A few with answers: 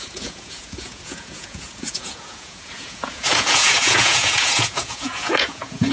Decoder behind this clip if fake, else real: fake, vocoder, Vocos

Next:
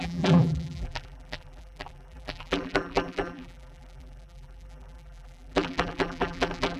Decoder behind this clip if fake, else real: fake, vocoder, BigVGAN v2